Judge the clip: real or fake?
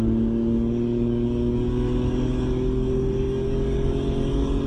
fake